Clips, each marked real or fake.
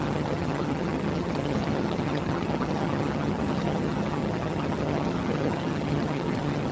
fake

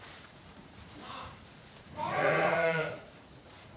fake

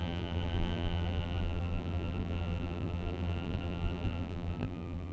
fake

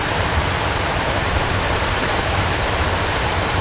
fake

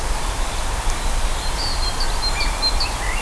real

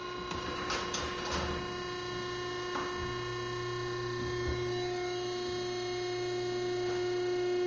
real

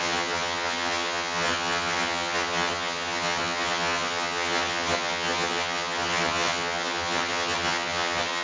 fake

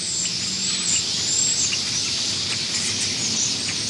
real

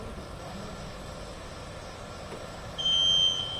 real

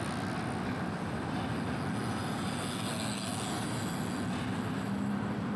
real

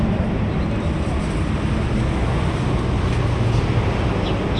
real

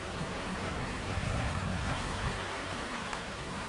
fake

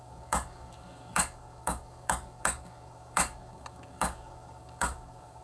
fake